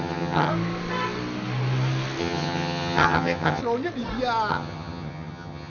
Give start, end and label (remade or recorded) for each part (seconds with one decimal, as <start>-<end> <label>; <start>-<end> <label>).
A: 0.0-0.5 remade; 0.5-2.2 recorded; 2.2-3.6 remade; 3.6-4.5 recorded; 4.5-5.7 remade